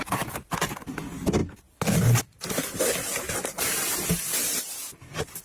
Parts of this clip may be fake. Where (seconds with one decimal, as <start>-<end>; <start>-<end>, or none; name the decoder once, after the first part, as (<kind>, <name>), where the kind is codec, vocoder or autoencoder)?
none